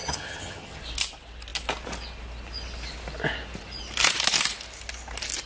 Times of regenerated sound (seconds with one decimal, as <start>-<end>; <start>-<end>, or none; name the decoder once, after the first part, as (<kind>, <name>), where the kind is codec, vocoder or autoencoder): 0.0-0.8 (vocoder, HiFi-GAN)